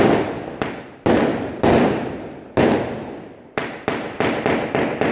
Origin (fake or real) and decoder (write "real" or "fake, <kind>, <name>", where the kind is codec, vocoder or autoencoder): real